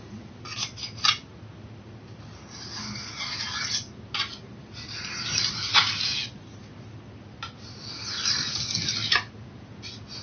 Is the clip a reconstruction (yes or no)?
no